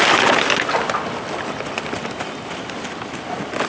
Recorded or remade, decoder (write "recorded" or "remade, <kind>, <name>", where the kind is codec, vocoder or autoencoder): recorded